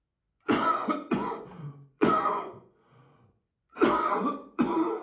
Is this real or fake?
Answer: fake